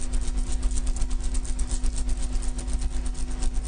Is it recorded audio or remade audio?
recorded